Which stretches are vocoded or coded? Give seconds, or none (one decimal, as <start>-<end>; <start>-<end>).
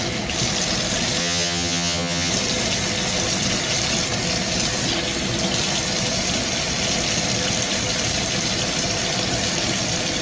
1.2-2.3